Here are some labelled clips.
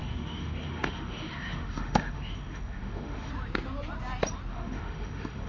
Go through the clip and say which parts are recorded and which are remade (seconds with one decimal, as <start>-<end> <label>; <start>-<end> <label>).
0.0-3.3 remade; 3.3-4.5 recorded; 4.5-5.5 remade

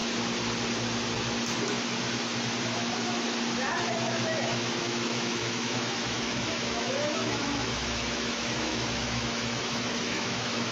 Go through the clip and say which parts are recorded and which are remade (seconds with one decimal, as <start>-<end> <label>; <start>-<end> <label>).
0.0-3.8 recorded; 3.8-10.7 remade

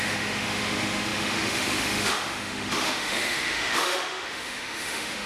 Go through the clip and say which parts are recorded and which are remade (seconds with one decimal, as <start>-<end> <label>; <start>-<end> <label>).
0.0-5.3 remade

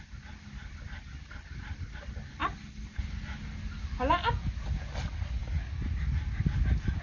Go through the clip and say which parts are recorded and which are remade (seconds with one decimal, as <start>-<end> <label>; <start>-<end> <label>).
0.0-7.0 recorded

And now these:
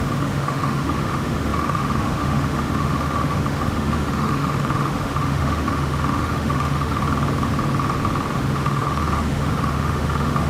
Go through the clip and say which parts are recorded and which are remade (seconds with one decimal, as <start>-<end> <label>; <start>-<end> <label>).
0.0-7.0 remade; 7.0-8.3 recorded; 8.3-10.5 remade

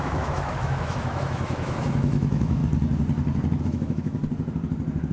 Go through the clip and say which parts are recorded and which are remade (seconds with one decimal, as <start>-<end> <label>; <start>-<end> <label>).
0.0-2.6 remade; 2.6-3.6 recorded; 3.6-4.2 remade; 4.2-5.1 recorded

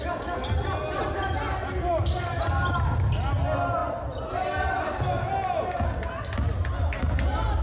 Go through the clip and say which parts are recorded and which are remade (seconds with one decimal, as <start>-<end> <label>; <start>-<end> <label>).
0.0-7.6 recorded